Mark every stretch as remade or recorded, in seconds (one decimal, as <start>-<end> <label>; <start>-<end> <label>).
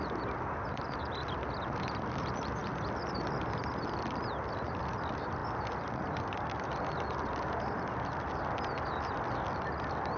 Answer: 0.0-10.2 recorded